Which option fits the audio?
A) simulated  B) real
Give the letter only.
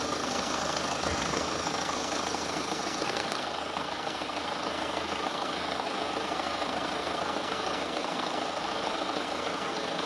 A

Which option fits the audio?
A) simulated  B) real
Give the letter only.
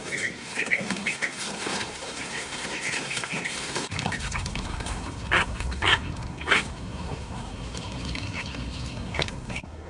A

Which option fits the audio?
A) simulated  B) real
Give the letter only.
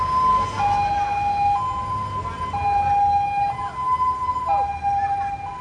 B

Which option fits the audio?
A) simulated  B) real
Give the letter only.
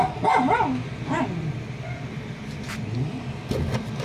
B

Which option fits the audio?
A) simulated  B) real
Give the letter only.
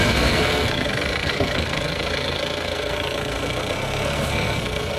A